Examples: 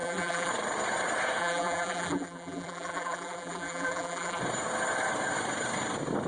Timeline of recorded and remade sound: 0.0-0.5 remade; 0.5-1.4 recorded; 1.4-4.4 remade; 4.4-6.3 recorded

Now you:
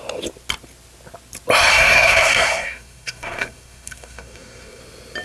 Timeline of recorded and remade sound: 0.0-1.7 recorded; 1.7-4.8 remade; 4.8-5.2 recorded

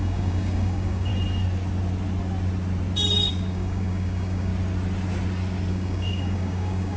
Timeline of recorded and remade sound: 0.0-1.1 remade; 1.1-3.3 recorded; 3.3-4.5 remade; 4.5-5.7 recorded; 5.7-7.0 remade